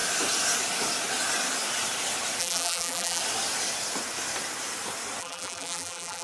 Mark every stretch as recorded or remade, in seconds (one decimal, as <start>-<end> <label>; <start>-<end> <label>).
0.0-2.4 recorded; 2.4-3.2 remade; 3.2-5.2 recorded; 5.2-6.2 remade

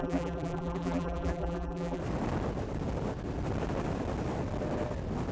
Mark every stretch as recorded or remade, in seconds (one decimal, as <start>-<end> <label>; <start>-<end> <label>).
0.0-2.0 remade; 2.0-5.3 recorded

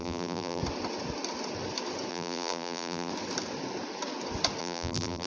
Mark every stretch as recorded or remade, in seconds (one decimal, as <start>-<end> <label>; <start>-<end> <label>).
0.0-0.6 remade; 0.6-2.1 recorded; 2.1-3.1 remade; 3.1-4.6 recorded; 4.6-5.3 remade